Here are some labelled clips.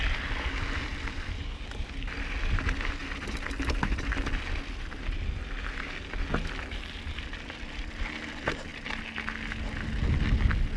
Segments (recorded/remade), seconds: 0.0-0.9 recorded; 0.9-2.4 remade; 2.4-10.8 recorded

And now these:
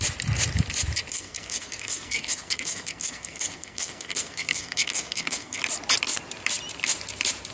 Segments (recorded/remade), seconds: 0.0-1.1 recorded; 1.1-5.6 remade; 5.6-7.5 recorded